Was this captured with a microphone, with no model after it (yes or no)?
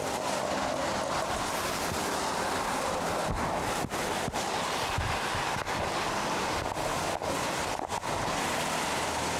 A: yes